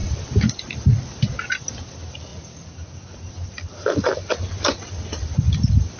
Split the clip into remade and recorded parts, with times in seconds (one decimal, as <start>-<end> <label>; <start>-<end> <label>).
0.0-6.0 recorded